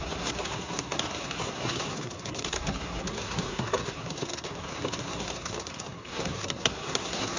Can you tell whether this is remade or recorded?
remade